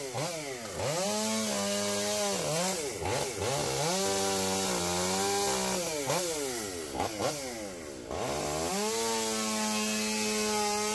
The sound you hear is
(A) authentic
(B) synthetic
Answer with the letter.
A